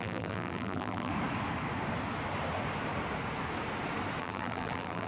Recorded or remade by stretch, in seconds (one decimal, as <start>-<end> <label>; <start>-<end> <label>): 0.0-1.1 remade; 1.1-4.2 recorded; 4.2-5.1 remade